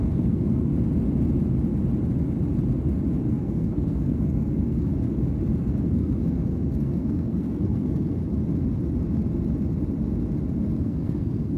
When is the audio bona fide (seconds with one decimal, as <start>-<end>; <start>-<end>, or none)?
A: 0.7-3.3; 4.9-5.6; 8.2-10.8